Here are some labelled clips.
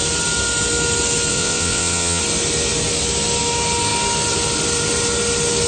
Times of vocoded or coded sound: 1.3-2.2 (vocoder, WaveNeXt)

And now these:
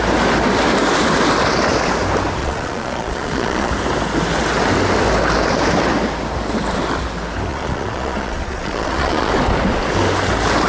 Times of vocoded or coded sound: 2.4-3.7 (vocoder, Vocos); 7.5-9.3